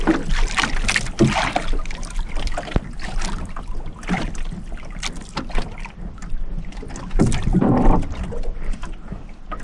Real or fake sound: real